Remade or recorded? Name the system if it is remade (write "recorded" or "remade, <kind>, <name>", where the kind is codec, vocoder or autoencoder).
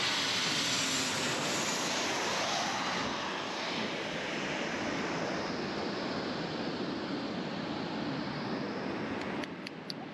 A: recorded